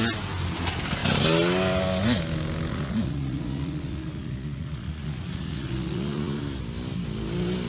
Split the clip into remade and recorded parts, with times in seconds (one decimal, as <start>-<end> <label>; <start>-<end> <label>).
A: 0.0-2.7 recorded; 2.7-6.4 remade; 6.4-7.7 recorded